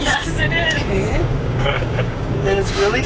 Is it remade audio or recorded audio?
remade